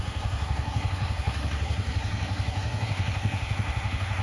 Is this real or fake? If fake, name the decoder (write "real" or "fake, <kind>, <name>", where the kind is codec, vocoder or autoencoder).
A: fake, codec, SNAC